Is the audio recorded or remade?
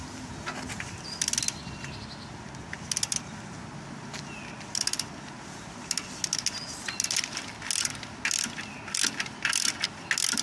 recorded